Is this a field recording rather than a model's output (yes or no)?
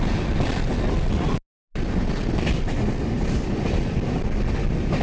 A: yes